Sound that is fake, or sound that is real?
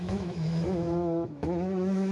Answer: fake